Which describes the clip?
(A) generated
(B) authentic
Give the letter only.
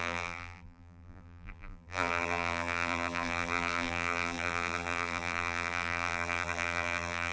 A